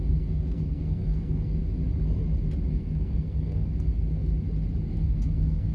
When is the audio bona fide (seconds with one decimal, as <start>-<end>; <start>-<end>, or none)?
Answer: 1.6-2.7; 4.3-4.9